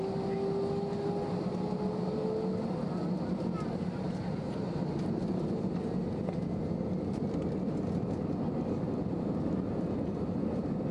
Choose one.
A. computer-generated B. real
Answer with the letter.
B